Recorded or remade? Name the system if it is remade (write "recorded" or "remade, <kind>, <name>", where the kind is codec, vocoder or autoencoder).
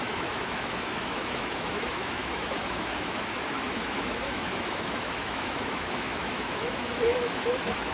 remade, autoencoder, DAC-VAE